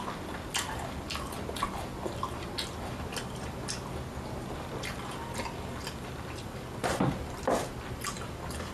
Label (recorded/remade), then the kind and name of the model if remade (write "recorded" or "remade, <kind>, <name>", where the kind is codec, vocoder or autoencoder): recorded